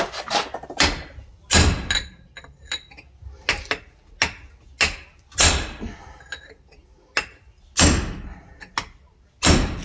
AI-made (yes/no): no